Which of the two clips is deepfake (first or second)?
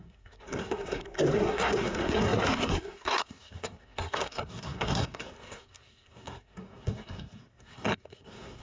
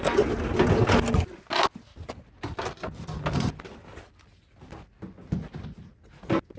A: first